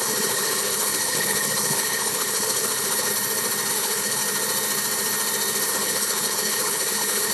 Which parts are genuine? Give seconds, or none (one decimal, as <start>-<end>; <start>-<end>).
3.1-3.7; 4.2-5.7

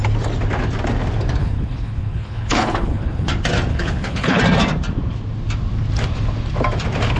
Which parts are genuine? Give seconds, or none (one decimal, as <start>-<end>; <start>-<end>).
0.0-1.4; 3.3-3.7; 4.4-7.2

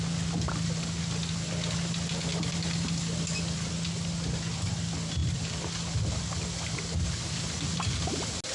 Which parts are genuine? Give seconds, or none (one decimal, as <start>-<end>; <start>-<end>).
0.0-8.5

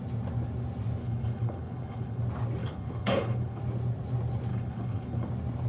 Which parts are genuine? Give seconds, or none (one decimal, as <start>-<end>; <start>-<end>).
0.0-1.0; 2.2-2.6; 3.6-4.5; 5.3-5.7

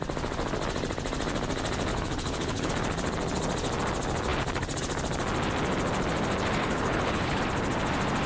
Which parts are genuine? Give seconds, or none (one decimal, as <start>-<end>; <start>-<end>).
0.0-1.9; 2.7-6.6; 7.4-8.3

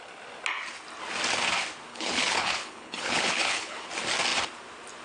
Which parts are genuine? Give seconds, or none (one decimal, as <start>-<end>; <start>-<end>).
0.0-1.9; 3.9-5.0

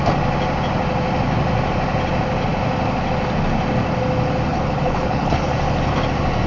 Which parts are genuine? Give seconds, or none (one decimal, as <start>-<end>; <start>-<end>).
0.0-4.5; 5.5-6.5

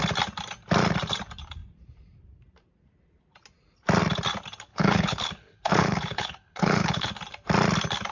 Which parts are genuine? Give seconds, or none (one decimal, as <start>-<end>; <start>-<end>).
0.0-4.7; 7.1-8.1